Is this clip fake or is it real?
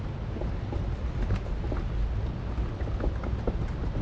real